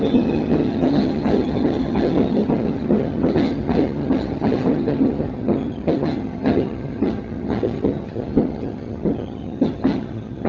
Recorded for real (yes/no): no